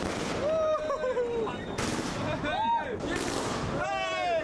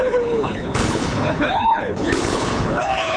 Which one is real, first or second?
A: first